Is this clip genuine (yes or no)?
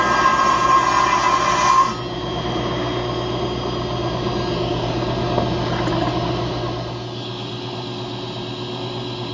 yes